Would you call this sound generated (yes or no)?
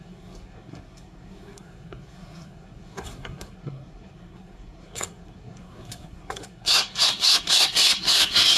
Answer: yes